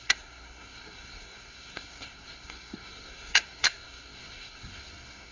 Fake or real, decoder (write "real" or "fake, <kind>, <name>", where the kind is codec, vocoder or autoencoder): fake, codec, SNAC